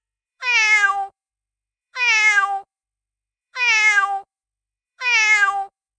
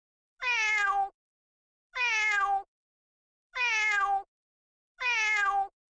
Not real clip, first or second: first